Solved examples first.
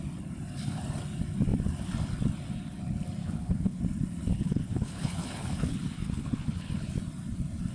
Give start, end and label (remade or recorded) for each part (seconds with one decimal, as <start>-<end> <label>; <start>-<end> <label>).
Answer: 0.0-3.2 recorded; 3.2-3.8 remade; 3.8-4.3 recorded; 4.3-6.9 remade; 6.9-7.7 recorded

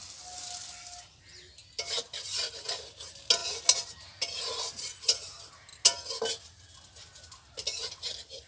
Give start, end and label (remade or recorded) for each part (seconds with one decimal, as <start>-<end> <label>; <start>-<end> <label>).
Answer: 0.0-8.5 recorded

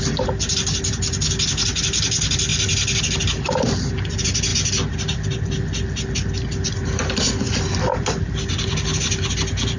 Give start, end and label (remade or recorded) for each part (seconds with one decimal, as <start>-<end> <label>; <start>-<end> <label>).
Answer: 0.0-9.8 recorded

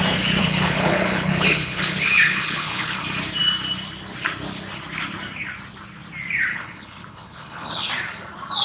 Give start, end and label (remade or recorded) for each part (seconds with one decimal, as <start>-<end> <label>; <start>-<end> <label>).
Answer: 0.0-0.4 recorded; 0.4-3.0 remade; 3.0-6.5 recorded; 6.5-7.9 remade; 7.9-8.6 recorded

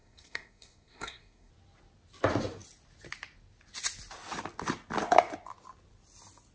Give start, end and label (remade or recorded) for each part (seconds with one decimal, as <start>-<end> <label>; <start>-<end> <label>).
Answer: 0.0-1.5 remade; 1.5-6.5 recorded

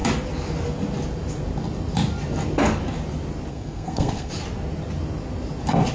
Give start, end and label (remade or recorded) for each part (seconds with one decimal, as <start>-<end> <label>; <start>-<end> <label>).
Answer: 0.0-3.5 recorded; 3.5-4.3 remade; 4.3-5.9 recorded

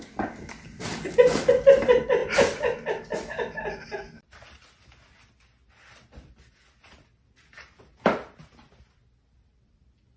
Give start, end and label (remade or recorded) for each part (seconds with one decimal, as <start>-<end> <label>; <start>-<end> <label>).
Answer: 0.0-10.2 recorded

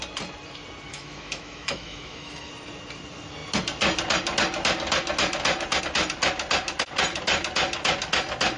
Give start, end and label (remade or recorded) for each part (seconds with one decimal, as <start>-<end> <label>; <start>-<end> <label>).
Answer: 0.0-0.9 recorded; 0.9-2.5 remade; 2.5-8.6 recorded